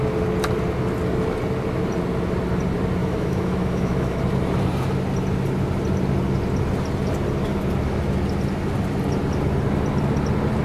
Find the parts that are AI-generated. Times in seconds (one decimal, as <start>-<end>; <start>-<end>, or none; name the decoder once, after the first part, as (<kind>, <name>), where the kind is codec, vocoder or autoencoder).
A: 3.0-4.2 (autoencoder, DAC-VAE)